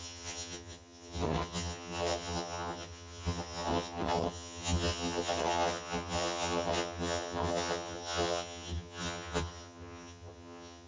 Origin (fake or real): fake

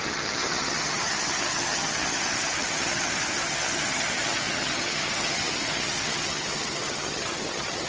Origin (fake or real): fake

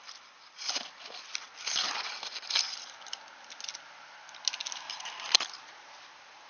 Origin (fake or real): real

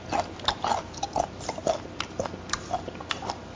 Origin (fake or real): real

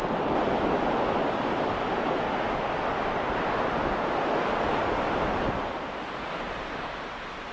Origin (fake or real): real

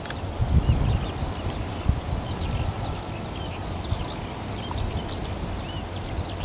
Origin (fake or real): real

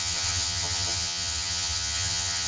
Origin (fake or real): fake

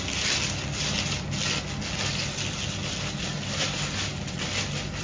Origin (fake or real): real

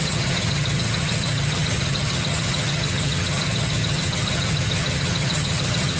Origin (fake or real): fake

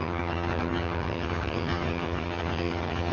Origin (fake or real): fake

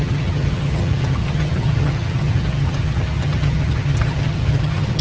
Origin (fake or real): fake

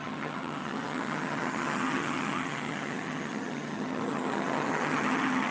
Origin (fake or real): fake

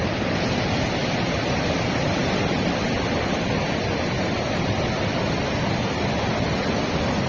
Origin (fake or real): real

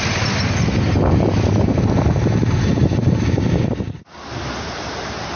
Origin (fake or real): real